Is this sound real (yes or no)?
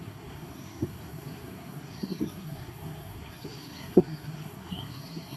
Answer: no